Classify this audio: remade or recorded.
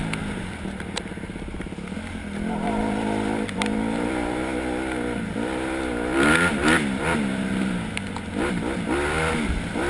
recorded